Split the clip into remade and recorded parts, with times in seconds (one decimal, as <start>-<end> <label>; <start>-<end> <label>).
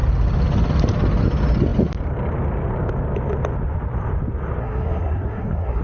0.0-4.6 recorded; 4.6-5.8 remade